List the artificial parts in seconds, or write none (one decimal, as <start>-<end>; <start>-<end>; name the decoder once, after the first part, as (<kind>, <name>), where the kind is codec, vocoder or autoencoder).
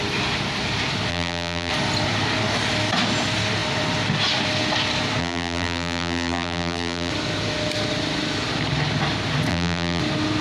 1.1-1.7 (vocoder, BigVGAN v2); 5.2-7.1; 9.5-10.0